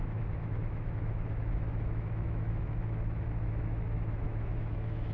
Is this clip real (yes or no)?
no